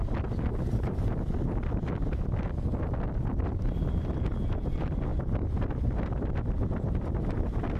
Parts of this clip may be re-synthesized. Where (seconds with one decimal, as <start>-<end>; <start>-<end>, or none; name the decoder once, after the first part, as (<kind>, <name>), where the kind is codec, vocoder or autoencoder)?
none